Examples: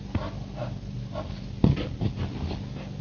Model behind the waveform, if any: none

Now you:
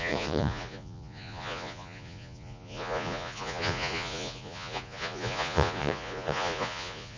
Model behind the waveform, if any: vocoder, Vocos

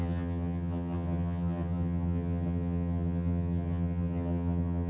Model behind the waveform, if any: vocoder, HiFi-GAN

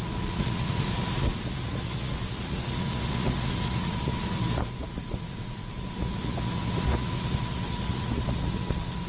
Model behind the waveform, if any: vocoder, Vocos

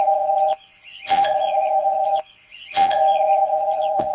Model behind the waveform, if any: vocoder, Vocos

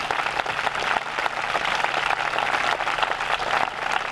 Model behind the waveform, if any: none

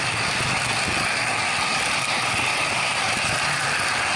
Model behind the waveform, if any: none